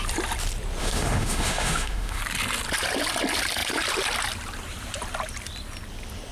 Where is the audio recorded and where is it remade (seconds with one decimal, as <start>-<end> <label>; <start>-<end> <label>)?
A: 0.0-0.8 recorded; 0.8-2.2 remade; 2.2-6.3 recorded